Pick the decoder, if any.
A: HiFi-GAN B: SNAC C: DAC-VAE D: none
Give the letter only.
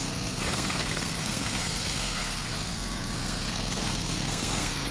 B